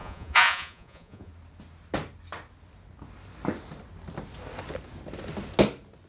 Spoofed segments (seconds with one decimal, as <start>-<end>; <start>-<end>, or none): 0.0-1.3